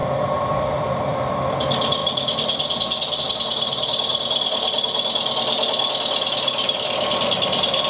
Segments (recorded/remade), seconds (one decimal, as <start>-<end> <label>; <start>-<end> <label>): 0.0-1.3 remade; 1.3-7.9 recorded